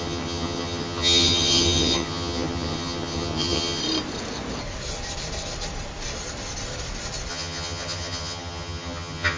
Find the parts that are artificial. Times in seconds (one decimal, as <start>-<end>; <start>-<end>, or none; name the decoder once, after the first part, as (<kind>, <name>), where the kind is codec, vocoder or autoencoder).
0.0-3.8 (vocoder, HiFi-GAN); 7.3-9.4